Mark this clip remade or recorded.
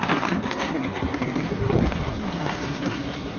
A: remade